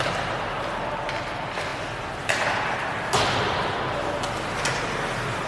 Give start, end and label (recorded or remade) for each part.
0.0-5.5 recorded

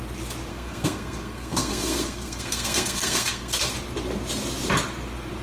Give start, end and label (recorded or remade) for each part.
0.0-0.5 recorded; 0.5-3.7 remade; 3.7-5.4 recorded

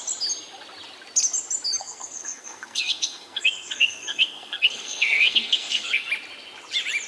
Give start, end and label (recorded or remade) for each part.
0.0-1.8 recorded; 1.8-6.1 remade; 6.1-7.1 recorded